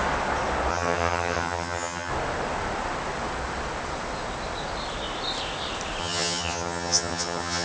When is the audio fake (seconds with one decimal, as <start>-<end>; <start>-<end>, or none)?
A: 0.7-2.1; 6.0-7.6